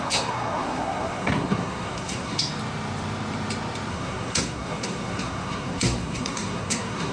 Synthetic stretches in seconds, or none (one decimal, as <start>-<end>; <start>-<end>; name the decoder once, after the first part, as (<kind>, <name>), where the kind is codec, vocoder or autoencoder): 0.0-2.5 (codec, SNAC); 3.9-7.1